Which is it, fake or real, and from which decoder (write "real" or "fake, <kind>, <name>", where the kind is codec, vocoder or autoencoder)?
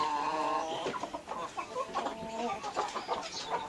real